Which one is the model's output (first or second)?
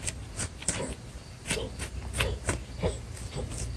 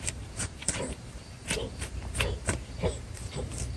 second